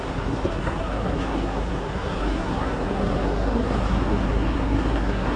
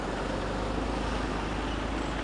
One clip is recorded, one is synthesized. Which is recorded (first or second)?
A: second